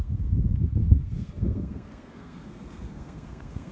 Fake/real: fake